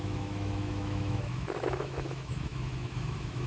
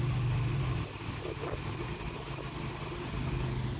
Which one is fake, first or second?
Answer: first